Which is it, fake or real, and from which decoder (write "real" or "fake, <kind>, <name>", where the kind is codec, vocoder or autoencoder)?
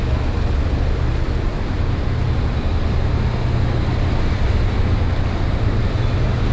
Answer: real